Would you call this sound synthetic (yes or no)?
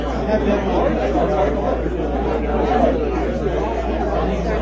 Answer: no